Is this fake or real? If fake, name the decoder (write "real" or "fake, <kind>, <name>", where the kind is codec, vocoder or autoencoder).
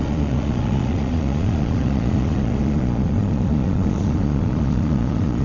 fake, vocoder, Vocos